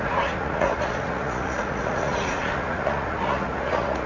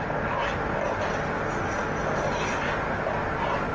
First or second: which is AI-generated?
first